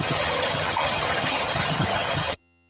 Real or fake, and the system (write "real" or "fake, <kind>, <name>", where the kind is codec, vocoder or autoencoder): fake, vocoder, HiFi-GAN